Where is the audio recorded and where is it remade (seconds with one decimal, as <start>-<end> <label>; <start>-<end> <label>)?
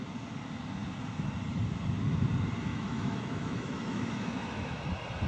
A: 0.0-2.7 recorded; 2.7-4.8 remade; 4.8-5.3 recorded